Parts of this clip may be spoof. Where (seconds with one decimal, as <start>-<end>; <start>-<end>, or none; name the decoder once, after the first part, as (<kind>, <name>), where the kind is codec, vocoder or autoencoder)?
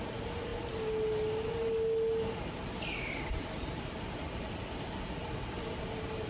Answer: none